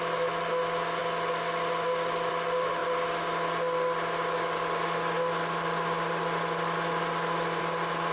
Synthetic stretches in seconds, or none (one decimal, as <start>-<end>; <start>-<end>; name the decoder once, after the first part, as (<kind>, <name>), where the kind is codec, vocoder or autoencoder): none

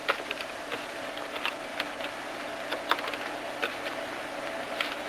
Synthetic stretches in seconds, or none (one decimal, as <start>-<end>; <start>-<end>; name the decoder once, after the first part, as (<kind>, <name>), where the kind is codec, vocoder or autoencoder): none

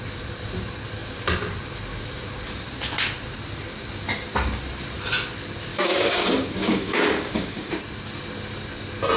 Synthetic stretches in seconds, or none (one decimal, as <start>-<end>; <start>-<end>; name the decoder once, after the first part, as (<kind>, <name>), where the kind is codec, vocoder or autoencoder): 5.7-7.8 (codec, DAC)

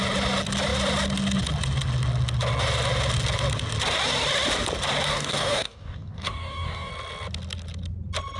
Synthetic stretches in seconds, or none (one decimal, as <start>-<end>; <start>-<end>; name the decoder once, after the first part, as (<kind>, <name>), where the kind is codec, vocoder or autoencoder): 5.1-6.9 (codec, DAC)

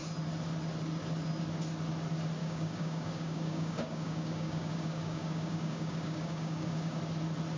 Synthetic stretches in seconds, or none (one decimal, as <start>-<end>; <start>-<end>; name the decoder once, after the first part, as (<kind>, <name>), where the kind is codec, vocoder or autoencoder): 2.4-7.0 (codec, DAC)